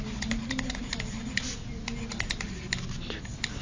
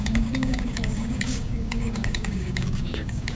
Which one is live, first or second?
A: first